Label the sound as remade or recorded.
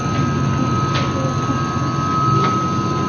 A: recorded